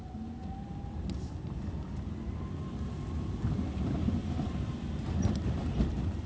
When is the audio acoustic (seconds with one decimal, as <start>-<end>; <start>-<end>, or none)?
0.0-4.2; 5.8-6.3